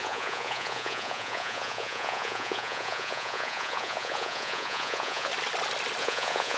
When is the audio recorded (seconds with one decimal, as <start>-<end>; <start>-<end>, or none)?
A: 5.3-6.0